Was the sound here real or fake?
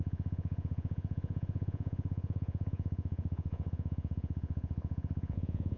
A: fake